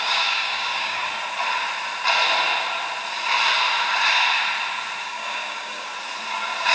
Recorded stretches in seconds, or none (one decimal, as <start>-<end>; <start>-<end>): 1.0-5.0; 5.9-6.7